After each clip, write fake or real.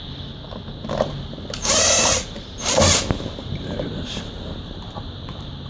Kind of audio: fake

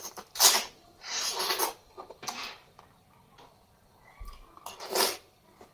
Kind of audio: real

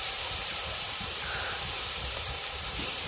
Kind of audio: fake